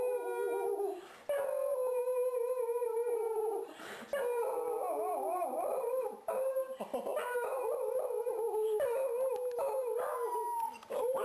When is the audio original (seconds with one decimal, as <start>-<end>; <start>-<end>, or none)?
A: 0.0-2.8; 3.7-5.3; 6.6-11.2